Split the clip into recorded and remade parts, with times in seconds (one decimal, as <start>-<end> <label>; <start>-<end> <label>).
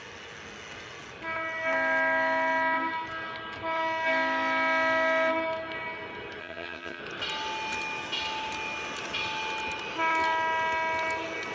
0.0-6.4 recorded; 6.4-7.0 remade; 7.0-11.5 recorded